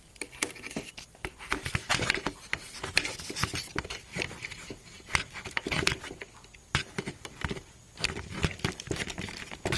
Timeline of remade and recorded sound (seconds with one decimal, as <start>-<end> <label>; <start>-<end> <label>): 0.0-9.8 remade